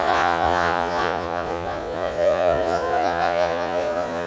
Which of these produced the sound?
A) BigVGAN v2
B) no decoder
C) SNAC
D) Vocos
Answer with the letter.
D